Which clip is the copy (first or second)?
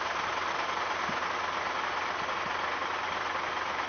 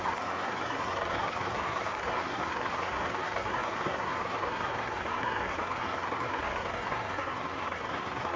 second